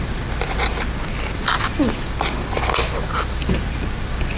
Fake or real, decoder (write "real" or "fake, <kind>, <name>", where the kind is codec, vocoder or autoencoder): real